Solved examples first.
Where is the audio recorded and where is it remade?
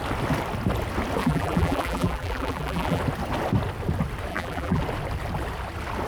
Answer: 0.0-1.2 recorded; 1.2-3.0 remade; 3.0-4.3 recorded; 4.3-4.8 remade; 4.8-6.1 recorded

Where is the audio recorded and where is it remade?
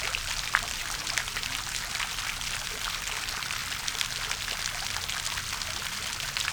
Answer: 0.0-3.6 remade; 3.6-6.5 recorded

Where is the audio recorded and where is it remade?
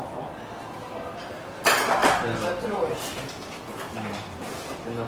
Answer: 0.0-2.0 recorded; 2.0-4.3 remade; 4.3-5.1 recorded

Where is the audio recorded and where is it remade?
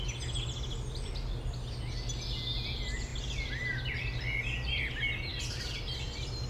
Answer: 0.0-6.5 recorded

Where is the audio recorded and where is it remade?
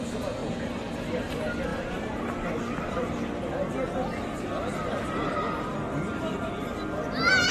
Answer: 0.0-7.5 recorded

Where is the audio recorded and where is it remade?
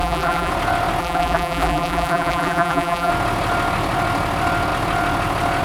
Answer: 0.0-0.5 remade; 0.5-1.0 recorded; 1.0-3.1 remade; 3.1-5.6 recorded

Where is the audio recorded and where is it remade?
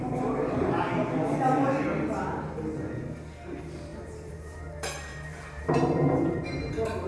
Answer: 0.0-3.9 recorded; 3.9-6.4 remade; 6.4-7.1 recorded